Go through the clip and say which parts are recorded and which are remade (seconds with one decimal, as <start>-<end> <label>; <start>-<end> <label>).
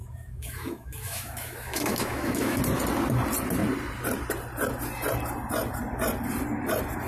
0.0-2.6 remade; 2.6-7.1 recorded